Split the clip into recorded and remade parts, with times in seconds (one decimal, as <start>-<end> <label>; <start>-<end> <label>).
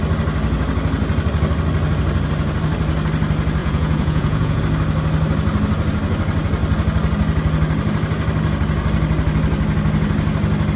0.0-3.6 recorded; 3.6-4.6 remade; 4.6-10.8 recorded